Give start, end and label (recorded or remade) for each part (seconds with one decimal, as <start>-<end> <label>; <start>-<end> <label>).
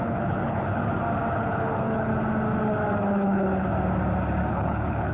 0.0-0.8 remade; 0.8-1.3 recorded; 1.3-2.1 remade; 2.1-3.0 recorded; 3.0-3.7 remade; 3.7-4.5 recorded; 4.5-5.1 remade